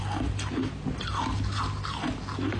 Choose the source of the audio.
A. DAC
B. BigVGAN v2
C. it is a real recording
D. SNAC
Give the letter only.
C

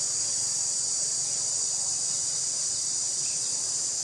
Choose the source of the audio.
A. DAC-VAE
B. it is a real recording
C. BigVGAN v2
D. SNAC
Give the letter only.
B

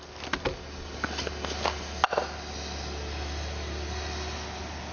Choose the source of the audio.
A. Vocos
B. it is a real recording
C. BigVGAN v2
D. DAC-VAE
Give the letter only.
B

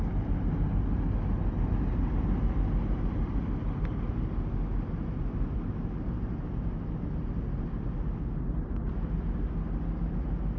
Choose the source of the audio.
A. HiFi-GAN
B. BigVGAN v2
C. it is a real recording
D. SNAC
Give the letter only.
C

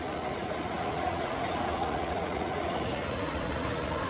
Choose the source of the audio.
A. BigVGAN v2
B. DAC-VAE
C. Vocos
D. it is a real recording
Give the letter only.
C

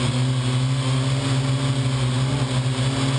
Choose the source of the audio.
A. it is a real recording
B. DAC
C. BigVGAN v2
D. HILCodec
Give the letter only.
A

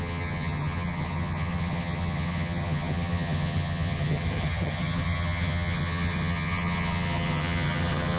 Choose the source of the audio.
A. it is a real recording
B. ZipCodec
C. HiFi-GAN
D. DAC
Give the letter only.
C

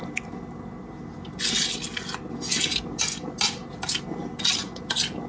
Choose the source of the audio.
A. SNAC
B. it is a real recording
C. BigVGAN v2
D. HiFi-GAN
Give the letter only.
B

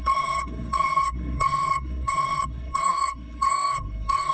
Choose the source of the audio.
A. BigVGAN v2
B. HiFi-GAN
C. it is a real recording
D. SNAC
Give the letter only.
D